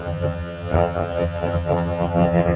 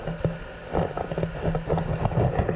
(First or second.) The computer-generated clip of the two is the first